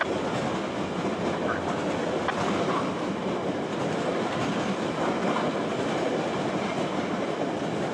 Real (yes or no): yes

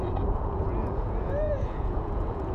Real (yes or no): no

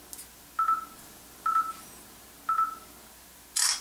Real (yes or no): yes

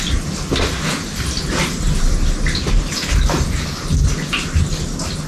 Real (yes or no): yes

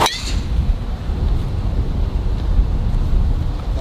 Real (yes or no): yes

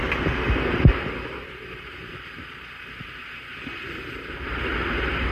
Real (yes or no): no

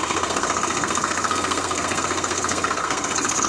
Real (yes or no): no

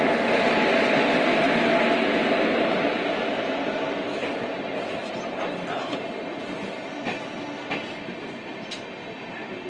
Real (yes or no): yes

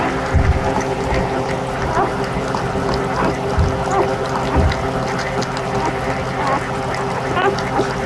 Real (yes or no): yes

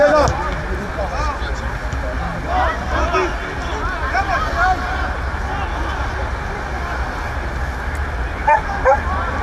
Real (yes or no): yes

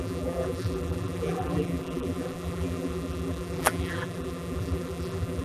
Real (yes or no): no